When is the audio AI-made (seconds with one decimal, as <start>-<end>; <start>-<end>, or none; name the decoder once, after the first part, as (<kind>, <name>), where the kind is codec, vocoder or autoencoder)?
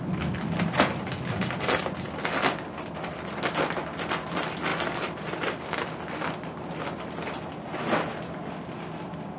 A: none